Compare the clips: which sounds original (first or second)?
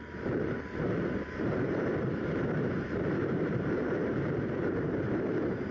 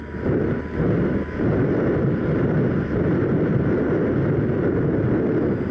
second